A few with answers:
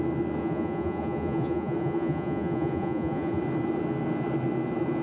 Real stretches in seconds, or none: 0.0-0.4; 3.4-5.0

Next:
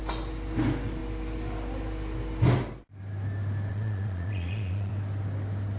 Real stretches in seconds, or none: 0.0-3.7; 4.9-5.8

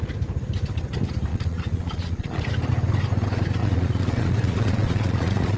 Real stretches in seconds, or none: 0.0-1.3; 2.4-3.6